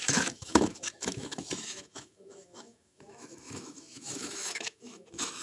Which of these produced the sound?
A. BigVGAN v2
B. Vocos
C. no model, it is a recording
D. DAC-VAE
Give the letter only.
D